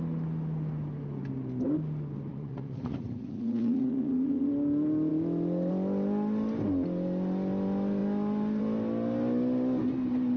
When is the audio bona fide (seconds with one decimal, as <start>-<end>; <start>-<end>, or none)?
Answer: 0.0-2.3; 4.5-10.4